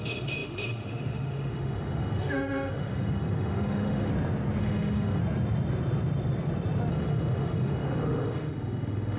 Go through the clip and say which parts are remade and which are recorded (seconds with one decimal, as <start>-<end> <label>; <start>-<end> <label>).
0.0-4.1 remade; 4.1-4.6 recorded; 4.6-5.2 remade; 5.2-6.9 recorded; 6.9-9.2 remade